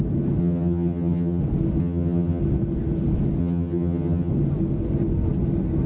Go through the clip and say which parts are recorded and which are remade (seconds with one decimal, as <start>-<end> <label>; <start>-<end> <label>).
0.0-0.4 recorded; 0.4-1.4 remade; 1.4-1.8 recorded; 1.8-2.4 remade; 2.4-3.4 recorded; 3.4-4.3 remade; 4.3-5.9 recorded